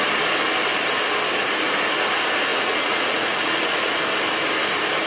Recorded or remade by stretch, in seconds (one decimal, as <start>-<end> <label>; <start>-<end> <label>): 0.0-2.5 recorded; 2.5-4.0 remade; 4.0-5.1 recorded